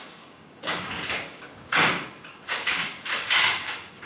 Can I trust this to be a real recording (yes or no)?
no